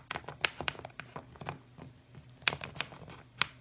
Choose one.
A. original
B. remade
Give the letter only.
A